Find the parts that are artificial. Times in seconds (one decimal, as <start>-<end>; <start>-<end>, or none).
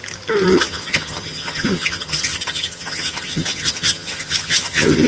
0.5-5.1